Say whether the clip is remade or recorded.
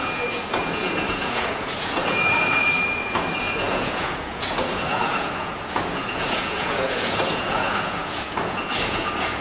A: remade